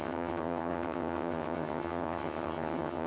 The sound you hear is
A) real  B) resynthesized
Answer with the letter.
B